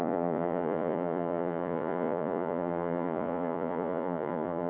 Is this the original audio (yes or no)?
no